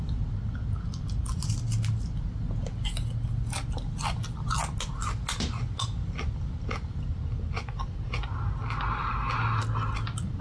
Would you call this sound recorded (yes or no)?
yes